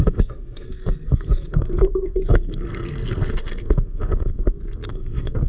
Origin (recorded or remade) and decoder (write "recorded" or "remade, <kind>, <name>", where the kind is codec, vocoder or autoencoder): remade, codec, SNAC